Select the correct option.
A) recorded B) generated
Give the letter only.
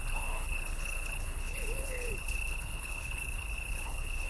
B